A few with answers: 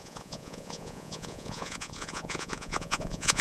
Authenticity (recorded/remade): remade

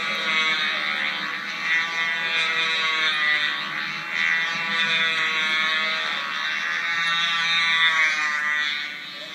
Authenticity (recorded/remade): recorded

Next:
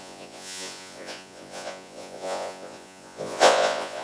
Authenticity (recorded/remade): remade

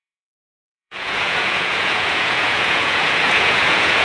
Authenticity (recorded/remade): remade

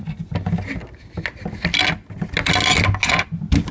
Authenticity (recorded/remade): recorded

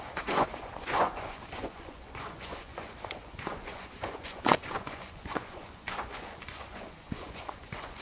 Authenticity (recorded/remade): remade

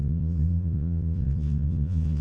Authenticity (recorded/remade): remade